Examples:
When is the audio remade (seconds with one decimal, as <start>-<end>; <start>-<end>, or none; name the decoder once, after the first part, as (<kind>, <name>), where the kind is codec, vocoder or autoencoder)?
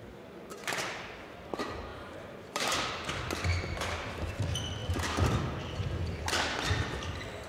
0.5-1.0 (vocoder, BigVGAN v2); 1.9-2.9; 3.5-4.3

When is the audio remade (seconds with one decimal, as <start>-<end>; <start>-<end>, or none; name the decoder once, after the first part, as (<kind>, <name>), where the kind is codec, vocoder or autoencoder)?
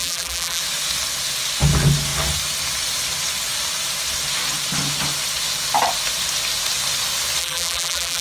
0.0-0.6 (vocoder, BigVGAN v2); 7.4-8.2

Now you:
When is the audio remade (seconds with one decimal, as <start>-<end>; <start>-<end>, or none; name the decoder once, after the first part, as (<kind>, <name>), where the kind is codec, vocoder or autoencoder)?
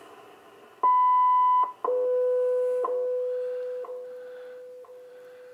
none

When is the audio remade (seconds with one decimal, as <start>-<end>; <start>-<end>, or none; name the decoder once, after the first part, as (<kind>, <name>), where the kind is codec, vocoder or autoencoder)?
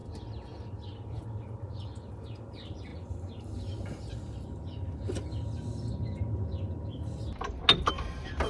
2.5-2.9 (vocoder, BigVGAN v2); 7.9-8.5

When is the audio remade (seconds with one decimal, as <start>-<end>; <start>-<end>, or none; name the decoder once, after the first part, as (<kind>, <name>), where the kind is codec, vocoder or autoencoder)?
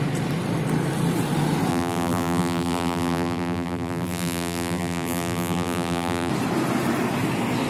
1.7-6.3 (vocoder, BigVGAN v2)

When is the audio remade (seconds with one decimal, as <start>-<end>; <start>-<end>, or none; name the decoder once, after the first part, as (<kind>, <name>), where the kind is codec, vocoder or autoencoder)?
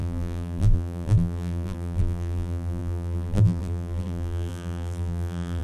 0.0-5.6 (vocoder, BigVGAN v2)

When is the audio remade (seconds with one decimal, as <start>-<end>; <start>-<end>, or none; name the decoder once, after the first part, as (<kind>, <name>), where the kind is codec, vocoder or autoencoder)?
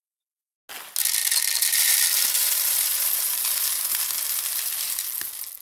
1.2-4.6 (vocoder, BigVGAN v2)